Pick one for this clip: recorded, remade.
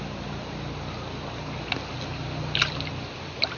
recorded